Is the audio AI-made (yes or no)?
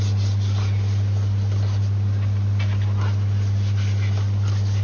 no